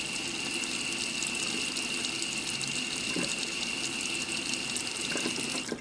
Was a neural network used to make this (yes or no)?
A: no